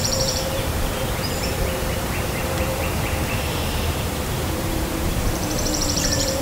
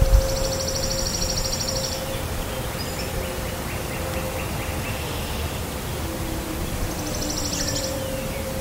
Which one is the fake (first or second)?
first